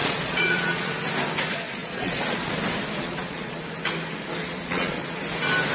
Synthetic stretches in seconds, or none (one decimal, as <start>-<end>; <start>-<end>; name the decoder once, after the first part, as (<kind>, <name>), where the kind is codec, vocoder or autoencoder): 0.0-0.9 (vocoder, Vocos); 1.8-2.5; 3.0-3.6; 4.4-5.2